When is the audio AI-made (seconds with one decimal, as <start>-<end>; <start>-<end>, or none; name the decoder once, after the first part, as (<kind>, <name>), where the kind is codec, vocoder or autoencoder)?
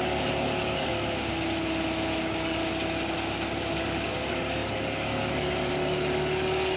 0.0-0.9 (codec, DAC); 2.2-2.6; 3.7-6.8